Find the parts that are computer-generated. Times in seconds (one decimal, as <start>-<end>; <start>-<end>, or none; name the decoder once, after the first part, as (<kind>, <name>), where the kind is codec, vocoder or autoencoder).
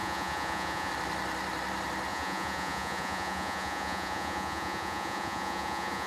0.0-0.9 (vocoder, Vocos); 2.1-6.1